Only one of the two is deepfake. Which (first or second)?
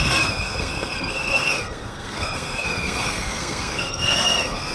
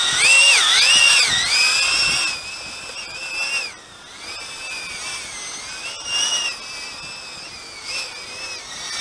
first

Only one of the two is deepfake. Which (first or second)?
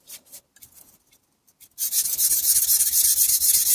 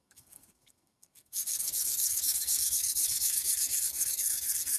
second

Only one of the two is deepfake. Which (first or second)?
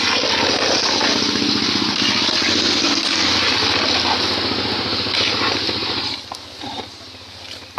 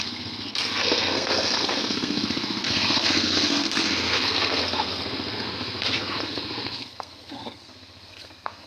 second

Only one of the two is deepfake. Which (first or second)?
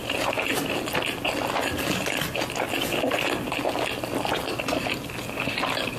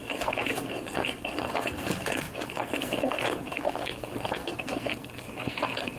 second